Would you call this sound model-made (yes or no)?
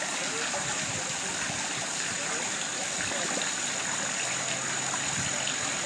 no